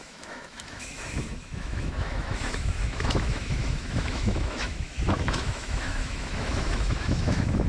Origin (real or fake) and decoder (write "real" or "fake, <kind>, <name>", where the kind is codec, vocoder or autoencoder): fake, autoencoder, DAC-VAE